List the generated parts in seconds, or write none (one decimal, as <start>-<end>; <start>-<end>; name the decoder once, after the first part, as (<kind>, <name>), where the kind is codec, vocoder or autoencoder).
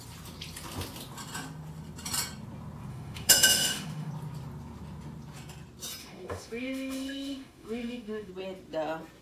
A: 2.9-4.1 (autoencoder, DAC-VAE); 6.0-8.3